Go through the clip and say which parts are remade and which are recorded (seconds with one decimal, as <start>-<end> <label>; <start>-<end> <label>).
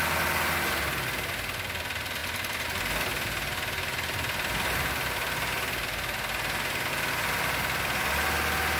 0.0-8.8 recorded